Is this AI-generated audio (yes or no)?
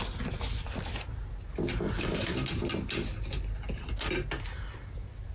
no